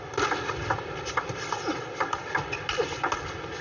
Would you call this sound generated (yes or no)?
no